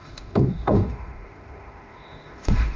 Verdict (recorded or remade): remade